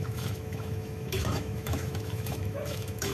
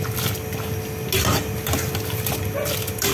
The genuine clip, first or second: second